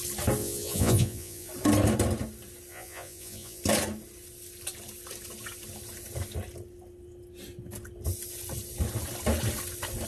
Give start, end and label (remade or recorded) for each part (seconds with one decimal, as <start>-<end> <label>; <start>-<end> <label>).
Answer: 0.0-0.4 recorded; 0.4-1.5 remade; 1.5-2.7 recorded; 2.7-3.6 remade; 3.6-10.1 recorded